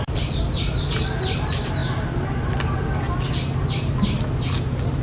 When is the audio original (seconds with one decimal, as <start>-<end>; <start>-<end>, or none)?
0.0-5.0